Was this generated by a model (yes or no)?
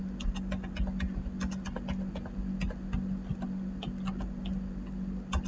no